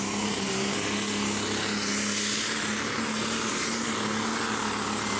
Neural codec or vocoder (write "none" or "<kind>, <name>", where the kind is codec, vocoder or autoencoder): none